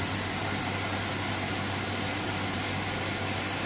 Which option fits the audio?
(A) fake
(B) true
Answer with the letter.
B